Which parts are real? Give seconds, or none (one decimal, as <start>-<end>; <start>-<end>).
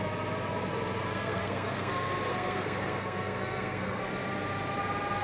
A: 0.0-1.1; 1.9-2.3; 4.0-5.2